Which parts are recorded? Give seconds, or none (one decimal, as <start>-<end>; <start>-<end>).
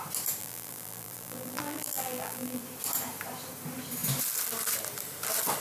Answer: 0.0-0.4; 2.6-5.6